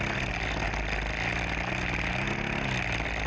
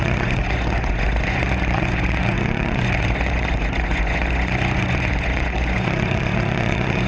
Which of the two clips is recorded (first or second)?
first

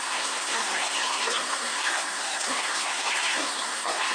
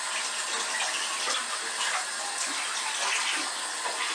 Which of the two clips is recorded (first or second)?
second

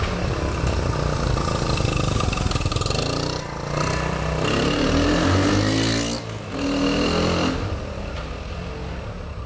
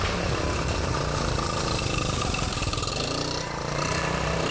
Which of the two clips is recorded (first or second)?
first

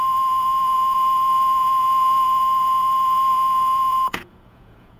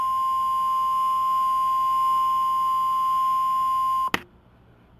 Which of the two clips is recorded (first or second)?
second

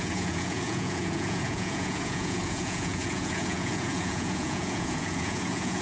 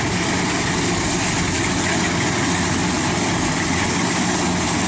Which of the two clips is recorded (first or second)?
second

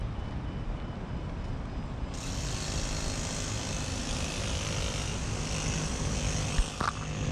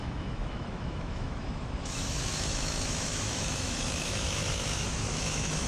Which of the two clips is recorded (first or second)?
first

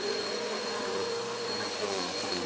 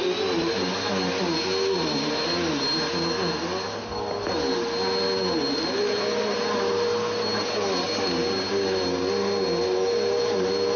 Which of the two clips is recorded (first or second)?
second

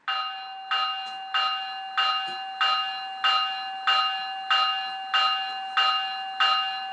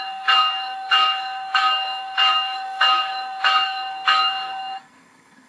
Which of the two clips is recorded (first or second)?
first